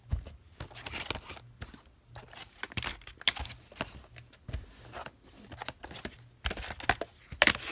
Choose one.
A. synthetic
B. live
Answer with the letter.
B